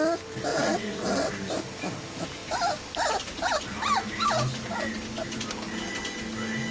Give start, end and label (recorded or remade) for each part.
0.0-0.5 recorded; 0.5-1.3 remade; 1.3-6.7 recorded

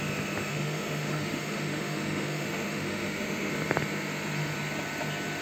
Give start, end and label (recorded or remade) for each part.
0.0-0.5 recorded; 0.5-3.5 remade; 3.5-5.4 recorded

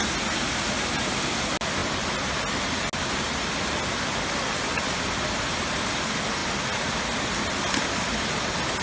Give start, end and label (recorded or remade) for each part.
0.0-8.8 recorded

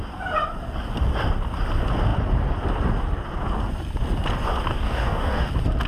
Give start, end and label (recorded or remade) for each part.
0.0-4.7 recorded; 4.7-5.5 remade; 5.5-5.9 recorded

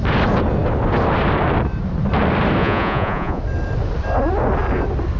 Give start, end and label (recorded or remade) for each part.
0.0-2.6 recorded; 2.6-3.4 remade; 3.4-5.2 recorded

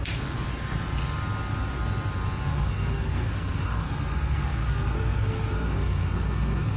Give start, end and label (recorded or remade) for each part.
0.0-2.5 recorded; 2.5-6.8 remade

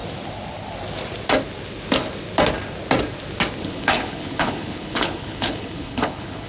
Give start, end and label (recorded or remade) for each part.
0.0-3.6 recorded; 3.6-6.5 remade

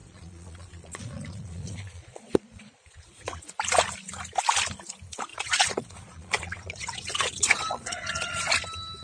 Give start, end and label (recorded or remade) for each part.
0.0-3.4 remade; 3.4-5.3 recorded; 5.3-8.5 remade; 8.5-9.0 recorded